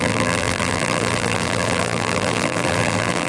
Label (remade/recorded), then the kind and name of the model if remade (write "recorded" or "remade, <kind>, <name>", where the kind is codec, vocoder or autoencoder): remade, vocoder, BigVGAN v2